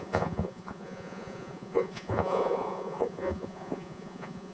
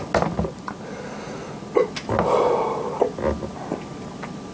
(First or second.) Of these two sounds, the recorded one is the second